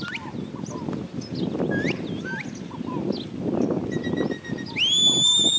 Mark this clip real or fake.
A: real